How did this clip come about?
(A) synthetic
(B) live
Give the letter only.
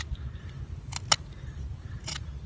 B